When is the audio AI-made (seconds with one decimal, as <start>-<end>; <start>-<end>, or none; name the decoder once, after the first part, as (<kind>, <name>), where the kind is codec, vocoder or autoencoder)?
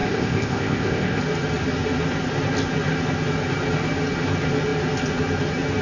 0.0-1.2 (codec, ZipCodec)